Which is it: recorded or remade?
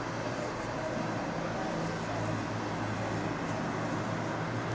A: recorded